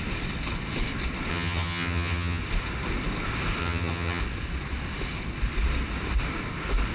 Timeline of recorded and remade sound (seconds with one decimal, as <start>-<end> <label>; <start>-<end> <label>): 0.0-1.3 recorded; 1.3-2.4 remade; 2.4-3.6 recorded; 3.6-4.2 remade; 4.2-6.9 recorded